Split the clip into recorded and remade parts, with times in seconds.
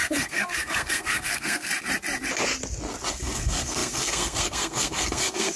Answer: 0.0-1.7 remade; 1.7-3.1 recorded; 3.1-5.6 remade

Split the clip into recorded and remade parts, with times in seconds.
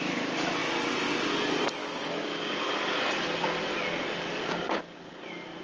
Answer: 0.0-1.8 recorded; 1.8-2.6 remade; 2.6-4.4 recorded; 4.4-5.1 remade; 5.1-5.6 recorded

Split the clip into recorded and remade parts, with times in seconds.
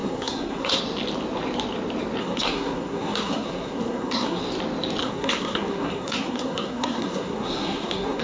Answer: 0.0-0.8 remade; 0.8-2.2 recorded; 2.2-4.4 remade; 4.4-5.0 recorded; 5.0-8.2 remade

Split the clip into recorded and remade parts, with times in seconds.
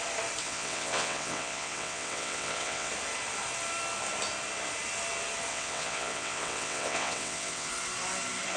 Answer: 0.0-0.4 recorded; 0.4-2.9 remade; 2.9-5.5 recorded; 5.5-7.7 remade; 7.7-8.6 recorded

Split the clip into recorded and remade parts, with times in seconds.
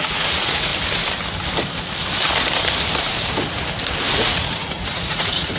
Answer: 0.0-0.7 remade; 0.7-4.1 recorded; 4.1-5.6 remade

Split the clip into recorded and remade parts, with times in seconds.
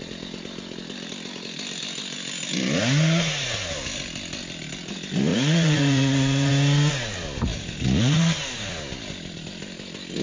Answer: 0.0-5.3 recorded; 5.3-6.5 remade; 6.5-7.5 recorded; 7.5-8.2 remade; 8.2-10.2 recorded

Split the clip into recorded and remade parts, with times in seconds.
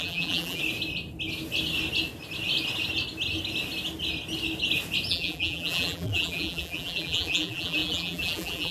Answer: 0.0-0.6 remade; 0.6-5.1 recorded; 5.1-8.7 remade